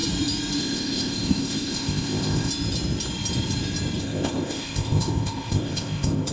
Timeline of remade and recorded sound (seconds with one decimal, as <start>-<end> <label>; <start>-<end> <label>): 0.0-0.6 recorded; 0.6-2.5 remade; 2.5-4.0 recorded; 4.0-6.3 remade